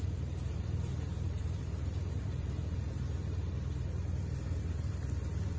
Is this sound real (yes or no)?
no